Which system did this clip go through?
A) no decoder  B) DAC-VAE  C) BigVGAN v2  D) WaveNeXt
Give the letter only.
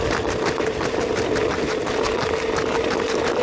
A